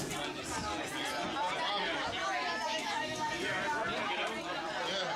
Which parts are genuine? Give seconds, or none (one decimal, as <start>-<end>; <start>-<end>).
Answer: 0.0-2.7; 3.3-5.2